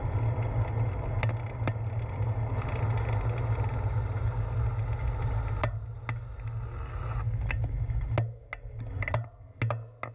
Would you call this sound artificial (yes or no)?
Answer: no